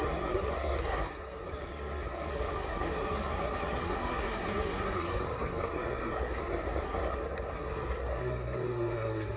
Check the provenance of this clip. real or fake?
fake